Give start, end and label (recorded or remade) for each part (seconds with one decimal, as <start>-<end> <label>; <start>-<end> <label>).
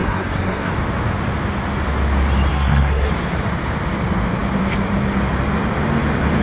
0.0-0.7 remade; 0.7-2.5 recorded; 2.5-3.1 remade; 3.1-6.4 recorded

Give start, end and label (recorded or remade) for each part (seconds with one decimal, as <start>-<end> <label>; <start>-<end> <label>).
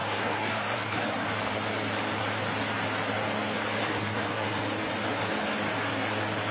0.0-1.3 remade; 1.3-3.8 recorded; 3.8-4.6 remade; 4.6-6.5 recorded